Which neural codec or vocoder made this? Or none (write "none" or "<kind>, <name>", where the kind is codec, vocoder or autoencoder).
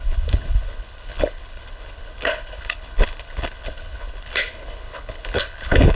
codec, HILCodec